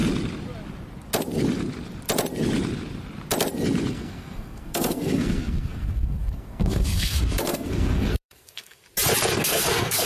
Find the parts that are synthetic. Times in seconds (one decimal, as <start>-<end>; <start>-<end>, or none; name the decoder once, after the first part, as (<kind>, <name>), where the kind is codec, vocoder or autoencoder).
3.9-8.8 (codec, SNAC); 9.3-10.1